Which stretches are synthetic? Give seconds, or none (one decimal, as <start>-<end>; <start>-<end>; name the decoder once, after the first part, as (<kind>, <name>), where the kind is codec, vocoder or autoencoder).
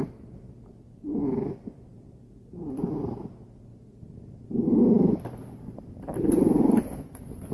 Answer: none